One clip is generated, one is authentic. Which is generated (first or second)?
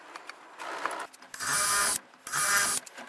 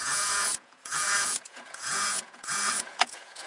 second